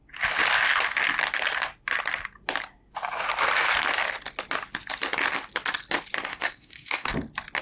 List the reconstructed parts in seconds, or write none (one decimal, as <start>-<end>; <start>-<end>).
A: 6.3-7.1